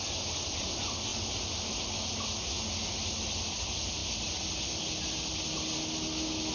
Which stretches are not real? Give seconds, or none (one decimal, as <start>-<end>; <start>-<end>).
none